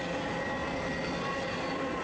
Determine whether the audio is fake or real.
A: real